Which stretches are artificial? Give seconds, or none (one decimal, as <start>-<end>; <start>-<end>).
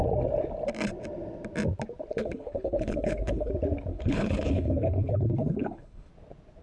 2.1-3.5; 3.9-6.1